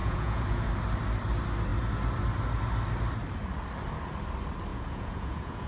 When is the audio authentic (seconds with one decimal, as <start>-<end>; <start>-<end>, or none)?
0.7-4.7